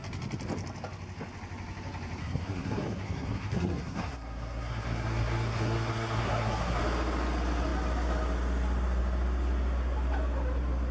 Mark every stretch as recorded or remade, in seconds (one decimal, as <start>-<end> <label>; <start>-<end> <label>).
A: 0.0-2.2 recorded; 2.2-6.8 remade; 6.8-10.9 recorded